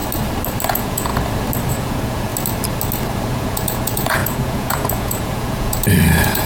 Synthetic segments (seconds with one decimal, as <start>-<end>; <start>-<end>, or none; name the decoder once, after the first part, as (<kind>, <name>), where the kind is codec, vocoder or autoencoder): 0.7-1.1 (vocoder, Vocos); 1.7-2.3; 3.3-6.5